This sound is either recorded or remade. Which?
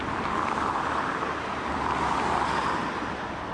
recorded